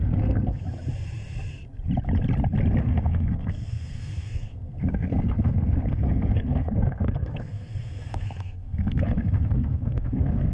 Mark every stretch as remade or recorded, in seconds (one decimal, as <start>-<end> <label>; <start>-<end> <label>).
0.0-0.6 remade; 0.6-2.8 recorded; 2.8-10.5 remade